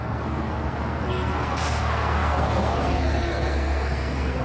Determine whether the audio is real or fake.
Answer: fake